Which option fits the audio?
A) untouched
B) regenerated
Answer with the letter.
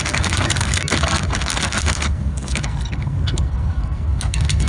B